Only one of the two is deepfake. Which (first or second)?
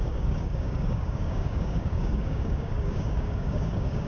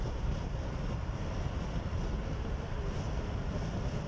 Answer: first